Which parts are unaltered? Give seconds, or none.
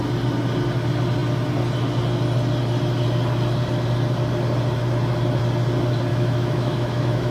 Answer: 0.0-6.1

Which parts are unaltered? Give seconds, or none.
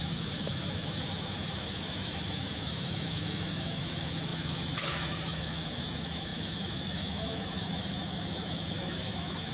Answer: none